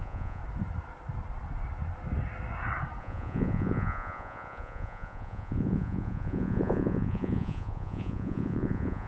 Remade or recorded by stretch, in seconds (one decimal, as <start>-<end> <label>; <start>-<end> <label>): 0.0-0.4 remade; 0.4-3.0 recorded; 3.0-9.1 remade